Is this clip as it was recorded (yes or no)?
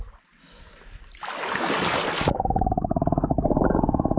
yes